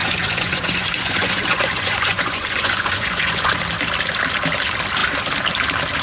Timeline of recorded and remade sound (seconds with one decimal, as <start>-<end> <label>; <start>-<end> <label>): 0.0-3.6 remade; 3.6-6.0 recorded